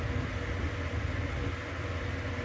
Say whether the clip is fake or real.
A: real